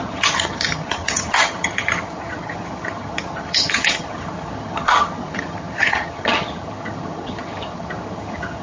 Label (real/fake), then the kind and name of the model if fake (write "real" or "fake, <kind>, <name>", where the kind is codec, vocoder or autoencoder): fake, vocoder, HiFi-GAN